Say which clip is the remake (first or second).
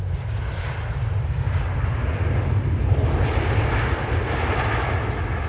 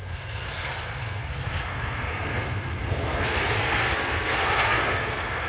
second